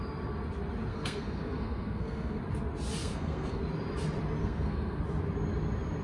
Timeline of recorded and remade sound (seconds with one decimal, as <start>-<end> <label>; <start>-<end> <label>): 0.0-0.9 recorded; 0.9-2.4 remade; 2.4-3.0 recorded; 3.0-3.6 remade; 3.6-4.4 recorded; 4.4-5.0 remade; 5.0-6.0 recorded